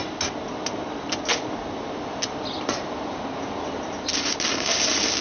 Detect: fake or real real